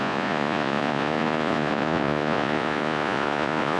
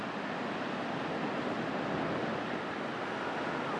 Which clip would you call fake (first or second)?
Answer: first